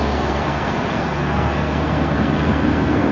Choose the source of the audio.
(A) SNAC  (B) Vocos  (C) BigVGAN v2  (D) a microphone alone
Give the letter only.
A